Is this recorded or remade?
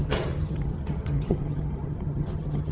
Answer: remade